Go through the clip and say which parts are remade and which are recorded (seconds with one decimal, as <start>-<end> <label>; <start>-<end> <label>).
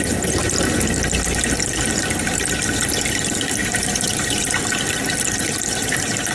0.0-3.6 recorded; 3.6-4.6 remade; 4.6-6.3 recorded